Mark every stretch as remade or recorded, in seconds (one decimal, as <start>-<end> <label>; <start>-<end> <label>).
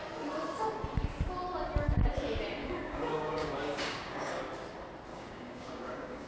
0.0-2.6 recorded; 2.6-4.4 remade; 4.4-5.1 recorded; 5.1-6.3 remade